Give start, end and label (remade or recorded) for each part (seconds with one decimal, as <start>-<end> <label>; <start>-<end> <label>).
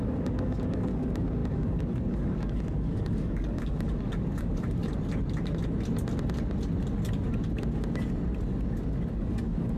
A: 0.0-4.8 remade; 4.8-9.1 recorded; 9.1-9.8 remade